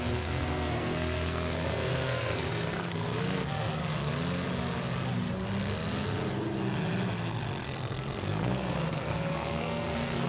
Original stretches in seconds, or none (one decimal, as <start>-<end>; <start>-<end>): 3.8-7.6